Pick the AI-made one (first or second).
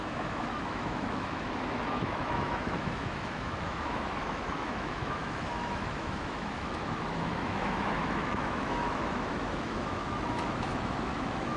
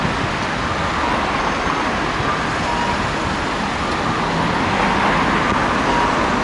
first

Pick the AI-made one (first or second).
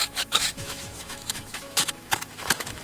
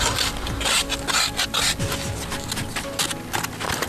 first